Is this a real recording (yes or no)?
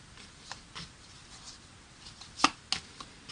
yes